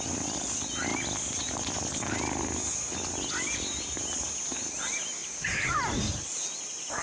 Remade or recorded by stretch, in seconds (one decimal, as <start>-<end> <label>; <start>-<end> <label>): 0.0-5.2 recorded; 5.2-6.2 remade; 6.2-7.0 recorded